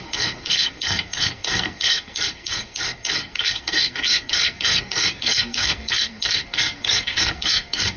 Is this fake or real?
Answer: fake